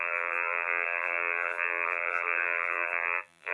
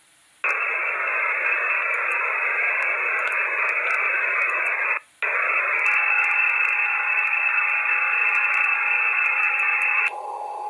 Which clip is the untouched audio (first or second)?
second